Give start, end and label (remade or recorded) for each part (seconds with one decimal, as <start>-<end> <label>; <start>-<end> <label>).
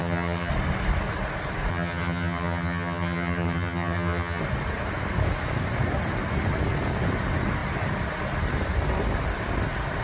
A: 0.0-0.5 remade; 0.5-1.7 recorded; 1.7-4.4 remade; 4.4-10.0 recorded